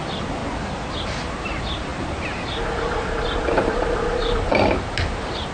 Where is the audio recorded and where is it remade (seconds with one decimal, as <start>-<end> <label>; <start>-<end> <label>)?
0.0-0.4 remade; 0.4-0.9 recorded; 0.9-5.5 remade